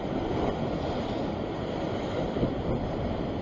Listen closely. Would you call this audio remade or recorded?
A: recorded